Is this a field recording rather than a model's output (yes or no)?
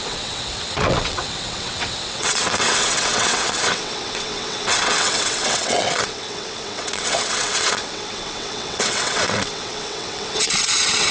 no